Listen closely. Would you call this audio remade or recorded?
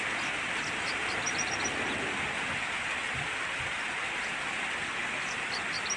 recorded